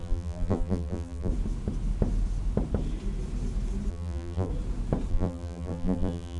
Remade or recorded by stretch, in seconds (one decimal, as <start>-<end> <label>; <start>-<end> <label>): 0.0-1.3 remade; 1.3-3.9 recorded; 3.9-4.5 remade; 4.5-5.1 recorded; 5.1-6.4 remade